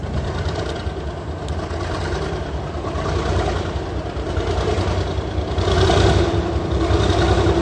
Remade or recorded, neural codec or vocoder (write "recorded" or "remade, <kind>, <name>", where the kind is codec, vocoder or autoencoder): remade, vocoder, BigVGAN v2